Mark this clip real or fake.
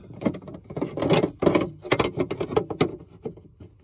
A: real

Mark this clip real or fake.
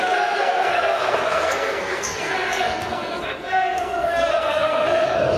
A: fake